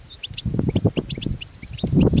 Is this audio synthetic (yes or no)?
no